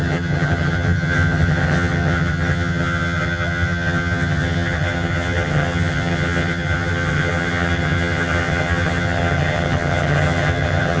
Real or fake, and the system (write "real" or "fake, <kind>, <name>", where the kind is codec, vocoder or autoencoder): fake, vocoder, HiFi-GAN